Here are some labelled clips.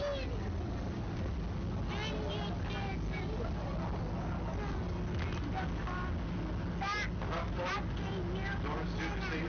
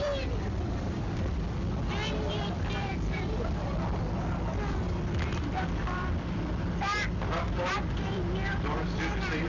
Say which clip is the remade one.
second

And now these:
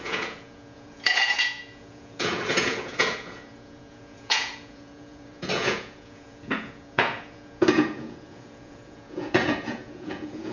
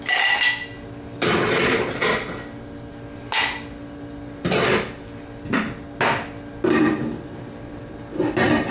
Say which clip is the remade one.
first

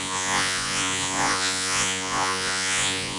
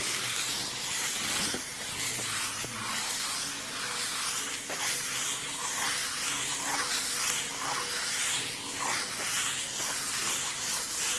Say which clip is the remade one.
first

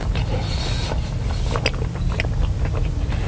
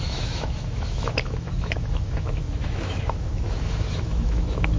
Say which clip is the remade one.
second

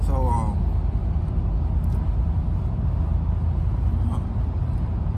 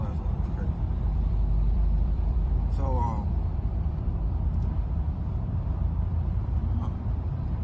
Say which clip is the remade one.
second